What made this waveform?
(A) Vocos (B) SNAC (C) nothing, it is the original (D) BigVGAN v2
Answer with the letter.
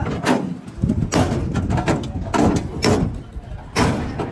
C